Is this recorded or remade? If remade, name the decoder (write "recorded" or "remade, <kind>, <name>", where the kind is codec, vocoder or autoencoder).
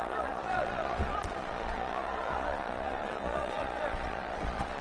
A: remade, vocoder, Vocos